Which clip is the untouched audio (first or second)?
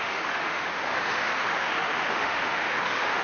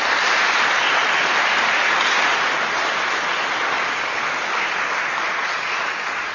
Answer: second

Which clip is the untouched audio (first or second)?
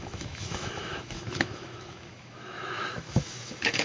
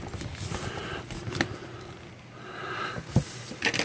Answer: second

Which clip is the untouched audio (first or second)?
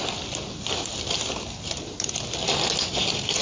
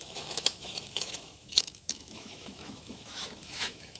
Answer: first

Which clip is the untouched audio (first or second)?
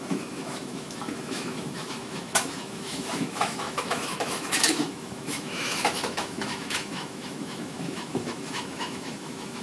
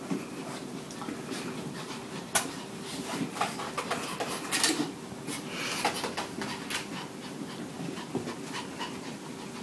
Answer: second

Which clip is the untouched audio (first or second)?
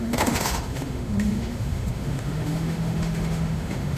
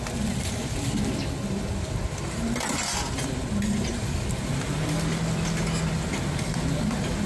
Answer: second